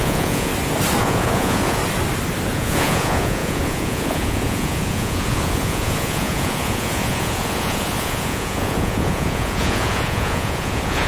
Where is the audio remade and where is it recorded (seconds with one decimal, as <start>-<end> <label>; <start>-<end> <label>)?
0.0-0.5 remade; 0.5-1.0 recorded; 1.0-1.8 remade; 1.8-2.5 recorded; 2.5-11.1 remade